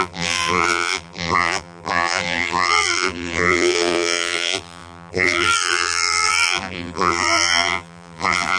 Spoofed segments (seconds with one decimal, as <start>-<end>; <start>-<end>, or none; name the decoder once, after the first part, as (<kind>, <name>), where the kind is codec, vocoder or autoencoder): 0.0-8.6 (vocoder, BigVGAN v2)